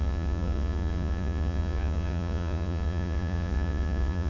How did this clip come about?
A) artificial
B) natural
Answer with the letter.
A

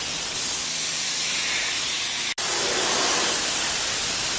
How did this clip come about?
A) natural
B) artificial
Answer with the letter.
A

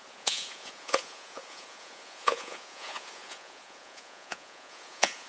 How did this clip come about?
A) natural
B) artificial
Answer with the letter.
B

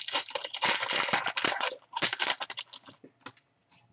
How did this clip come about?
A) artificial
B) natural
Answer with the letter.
B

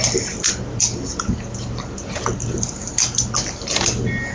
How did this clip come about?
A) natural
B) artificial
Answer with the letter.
A